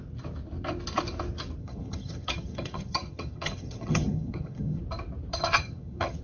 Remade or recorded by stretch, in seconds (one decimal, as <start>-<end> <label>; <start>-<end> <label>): 0.0-1.6 recorded; 1.6-4.8 remade; 4.8-5.3 recorded; 5.3-6.2 remade